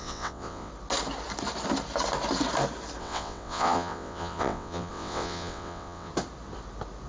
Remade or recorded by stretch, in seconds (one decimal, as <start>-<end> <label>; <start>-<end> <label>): 0.0-0.7 remade; 0.7-3.0 recorded; 3.0-6.1 remade; 6.1-7.1 recorded